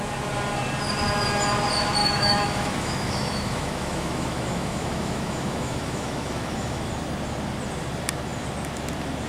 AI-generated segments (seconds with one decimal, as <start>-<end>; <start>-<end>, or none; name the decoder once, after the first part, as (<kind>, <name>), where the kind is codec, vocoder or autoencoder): 2.0-6.9 (autoencoder, DAC-VAE)